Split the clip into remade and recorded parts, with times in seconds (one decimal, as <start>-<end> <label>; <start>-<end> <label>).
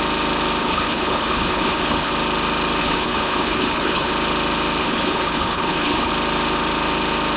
0.0-0.6 recorded; 0.6-2.1 remade; 2.1-2.8 recorded; 2.8-4.1 remade; 4.1-4.8 recorded; 4.8-6.1 remade; 6.1-7.4 recorded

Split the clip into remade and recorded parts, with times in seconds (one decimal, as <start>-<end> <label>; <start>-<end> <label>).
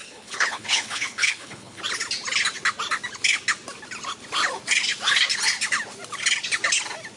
0.0-1.8 remade; 1.8-7.2 recorded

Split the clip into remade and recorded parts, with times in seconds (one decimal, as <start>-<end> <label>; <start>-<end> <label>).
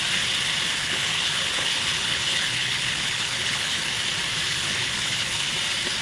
0.0-0.8 recorded; 0.8-3.9 remade; 3.9-4.4 recorded; 4.4-5.5 remade; 5.5-6.0 recorded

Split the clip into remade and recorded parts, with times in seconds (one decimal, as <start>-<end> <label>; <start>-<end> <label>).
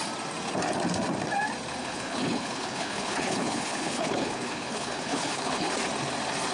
0.0-1.8 recorded; 1.8-5.7 remade; 5.7-6.5 recorded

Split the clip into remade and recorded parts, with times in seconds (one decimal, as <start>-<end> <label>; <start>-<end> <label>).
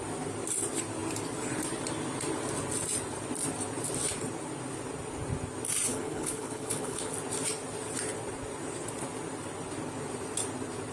0.0-5.9 recorded; 5.9-7.1 remade; 7.1-10.9 recorded